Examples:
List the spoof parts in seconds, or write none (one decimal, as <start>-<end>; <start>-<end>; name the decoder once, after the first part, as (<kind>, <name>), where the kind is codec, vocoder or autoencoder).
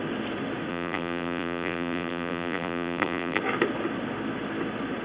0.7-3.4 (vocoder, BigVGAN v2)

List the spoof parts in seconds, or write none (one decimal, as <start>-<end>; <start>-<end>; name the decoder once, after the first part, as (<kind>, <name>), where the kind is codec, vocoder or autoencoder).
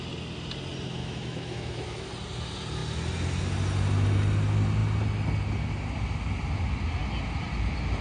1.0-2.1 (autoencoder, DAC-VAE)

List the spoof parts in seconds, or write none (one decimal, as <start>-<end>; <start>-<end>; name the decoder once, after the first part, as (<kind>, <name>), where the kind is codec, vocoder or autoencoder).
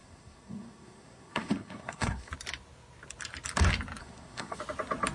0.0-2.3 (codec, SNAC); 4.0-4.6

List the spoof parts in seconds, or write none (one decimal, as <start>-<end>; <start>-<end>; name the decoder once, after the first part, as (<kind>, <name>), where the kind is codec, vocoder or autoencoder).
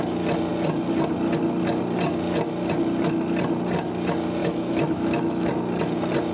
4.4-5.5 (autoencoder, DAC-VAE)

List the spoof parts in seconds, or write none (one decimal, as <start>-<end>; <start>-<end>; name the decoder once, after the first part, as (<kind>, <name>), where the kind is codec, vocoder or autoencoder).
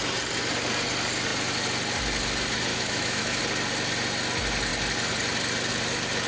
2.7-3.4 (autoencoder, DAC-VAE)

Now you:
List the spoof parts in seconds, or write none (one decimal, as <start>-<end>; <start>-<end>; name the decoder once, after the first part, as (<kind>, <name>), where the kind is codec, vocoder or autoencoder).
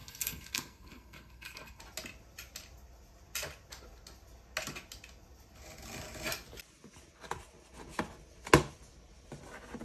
0.0-1.8 (codec, SNAC)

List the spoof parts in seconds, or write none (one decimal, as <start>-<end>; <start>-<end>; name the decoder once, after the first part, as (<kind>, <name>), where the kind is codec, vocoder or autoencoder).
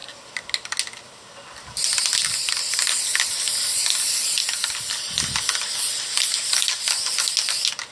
none